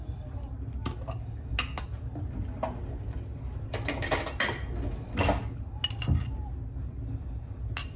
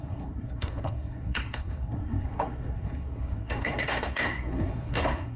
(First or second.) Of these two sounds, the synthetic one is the second